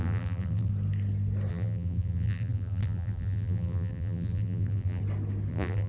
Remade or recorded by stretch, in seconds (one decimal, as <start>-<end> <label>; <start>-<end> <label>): 0.0-0.7 remade; 0.7-1.5 recorded; 1.5-5.0 remade; 5.0-5.5 recorded; 5.5-5.9 remade